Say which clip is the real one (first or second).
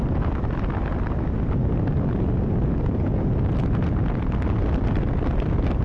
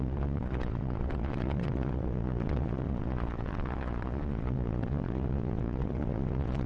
first